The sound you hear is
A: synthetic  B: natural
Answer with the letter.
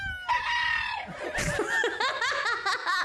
B